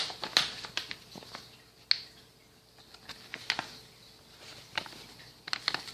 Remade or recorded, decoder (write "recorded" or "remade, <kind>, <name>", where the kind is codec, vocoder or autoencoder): recorded